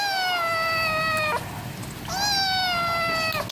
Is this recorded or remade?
recorded